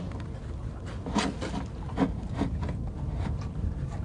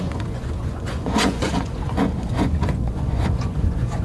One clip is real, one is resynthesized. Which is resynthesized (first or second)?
second